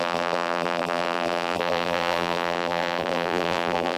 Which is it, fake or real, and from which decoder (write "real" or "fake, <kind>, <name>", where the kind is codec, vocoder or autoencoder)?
fake, vocoder, BigVGAN v2